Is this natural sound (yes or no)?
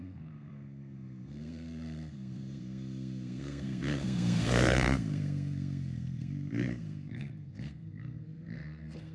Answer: no